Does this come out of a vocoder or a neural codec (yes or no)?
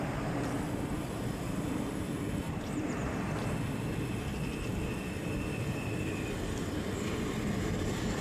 no